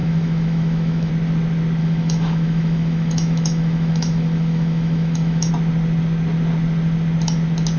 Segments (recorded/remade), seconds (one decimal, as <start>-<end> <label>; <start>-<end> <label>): 0.0-1.1 remade; 1.1-1.8 recorded; 1.8-5.5 remade; 5.5-7.8 recorded